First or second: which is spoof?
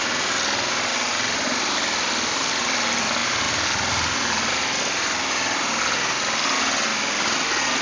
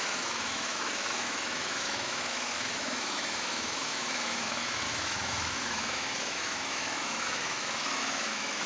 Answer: second